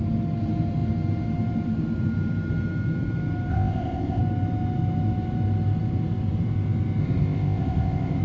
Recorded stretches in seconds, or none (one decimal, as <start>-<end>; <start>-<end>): 0.0-3.5; 4.2-7.0